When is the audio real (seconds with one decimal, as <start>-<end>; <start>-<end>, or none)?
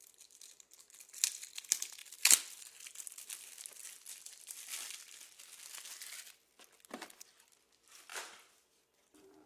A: 0.0-8.1; 8.9-9.5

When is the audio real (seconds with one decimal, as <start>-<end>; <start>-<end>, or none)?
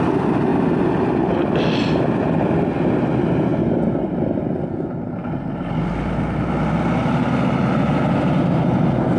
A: 0.0-9.2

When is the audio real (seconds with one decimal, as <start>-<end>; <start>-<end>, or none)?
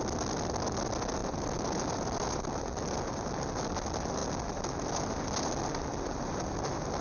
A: 0.0-1.2; 2.6-7.0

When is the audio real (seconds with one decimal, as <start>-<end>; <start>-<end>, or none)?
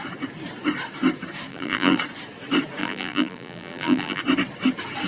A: 0.0-1.5; 2.0-2.8; 4.2-5.1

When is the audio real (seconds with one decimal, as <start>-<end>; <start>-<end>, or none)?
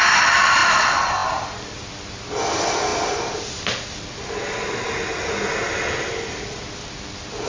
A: 0.0-7.5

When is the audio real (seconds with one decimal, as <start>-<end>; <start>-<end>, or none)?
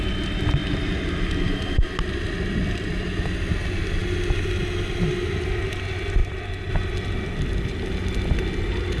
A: 0.0-0.6; 1.3-1.8; 2.9-9.0